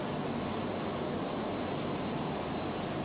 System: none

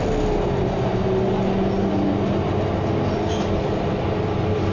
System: none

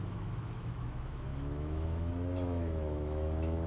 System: autoencoder, DAC-VAE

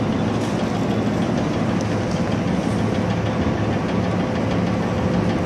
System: none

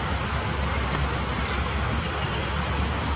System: none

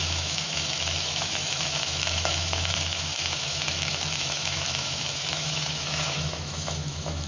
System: autoencoder, DAC-VAE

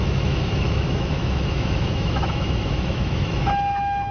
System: autoencoder, DAC-VAE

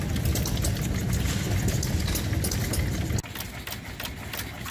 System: none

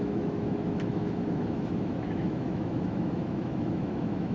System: autoencoder, DAC-VAE